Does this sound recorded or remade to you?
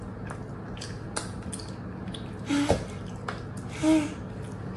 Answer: recorded